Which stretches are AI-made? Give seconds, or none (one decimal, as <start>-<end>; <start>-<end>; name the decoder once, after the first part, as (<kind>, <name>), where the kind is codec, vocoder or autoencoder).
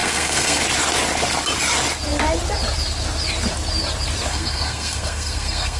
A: 0.0-0.6 (codec, SNAC); 4.3-5.8